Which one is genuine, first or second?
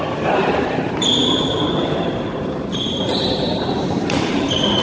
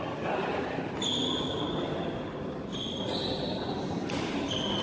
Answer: second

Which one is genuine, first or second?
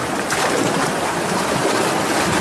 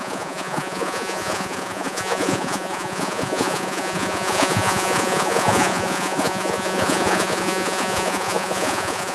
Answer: first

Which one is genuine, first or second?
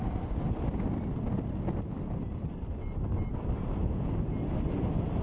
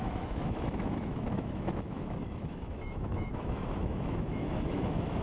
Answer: first